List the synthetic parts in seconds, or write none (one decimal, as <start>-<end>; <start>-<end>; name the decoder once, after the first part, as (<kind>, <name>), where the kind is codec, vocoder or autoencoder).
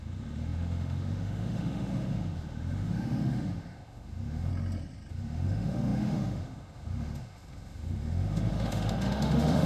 0.0-4.5 (autoencoder, DAC-VAE); 5.1-9.7